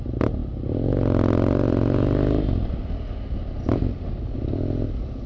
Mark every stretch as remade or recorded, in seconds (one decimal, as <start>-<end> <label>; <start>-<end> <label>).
0.0-5.3 recorded